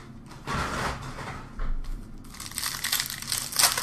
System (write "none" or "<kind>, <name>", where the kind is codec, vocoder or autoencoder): none